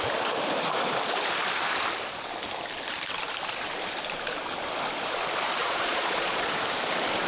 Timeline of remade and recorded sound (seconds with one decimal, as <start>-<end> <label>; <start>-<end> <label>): 0.0-5.6 recorded; 5.6-6.6 remade; 6.6-7.3 recorded

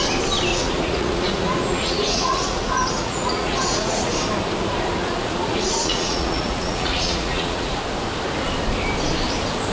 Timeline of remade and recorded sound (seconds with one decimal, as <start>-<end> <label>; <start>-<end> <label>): 0.0-0.5 recorded; 0.5-4.1 remade; 4.1-5.0 recorded; 5.0-7.8 remade; 7.8-9.7 recorded

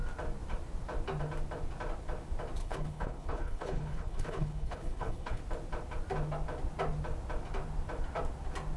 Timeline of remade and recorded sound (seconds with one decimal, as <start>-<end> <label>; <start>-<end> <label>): 0.0-2.6 recorded; 2.6-5.4 remade; 5.4-8.8 recorded

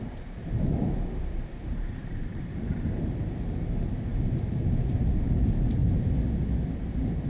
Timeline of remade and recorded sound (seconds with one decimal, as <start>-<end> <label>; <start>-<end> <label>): 0.0-5.8 remade; 5.8-6.4 recorded; 6.4-7.3 remade

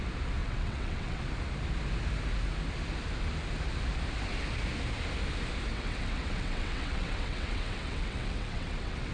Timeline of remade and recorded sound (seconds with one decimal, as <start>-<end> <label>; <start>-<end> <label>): 0.0-0.4 recorded; 0.4-1.2 remade; 1.2-5.7 recorded; 5.7-9.1 remade